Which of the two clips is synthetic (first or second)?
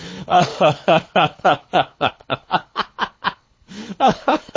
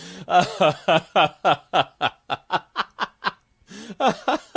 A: first